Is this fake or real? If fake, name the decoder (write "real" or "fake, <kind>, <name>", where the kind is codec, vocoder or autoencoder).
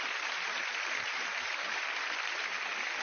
fake, vocoder, BigVGAN v2